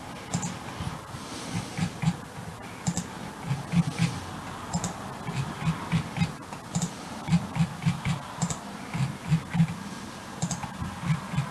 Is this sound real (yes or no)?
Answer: yes